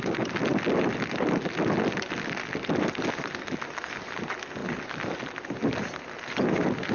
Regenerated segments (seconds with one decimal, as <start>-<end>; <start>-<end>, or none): none